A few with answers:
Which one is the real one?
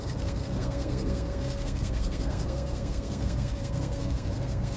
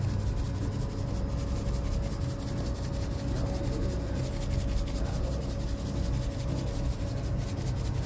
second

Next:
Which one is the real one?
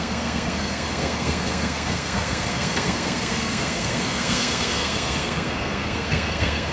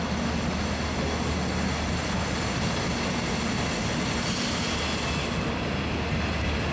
second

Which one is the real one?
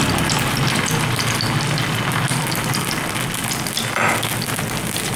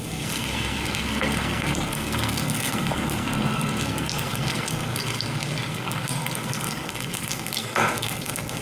first